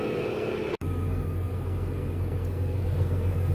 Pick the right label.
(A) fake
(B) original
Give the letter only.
A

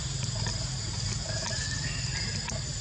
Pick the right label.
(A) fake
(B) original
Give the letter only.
B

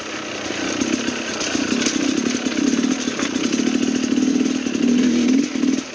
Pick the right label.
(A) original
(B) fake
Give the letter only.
A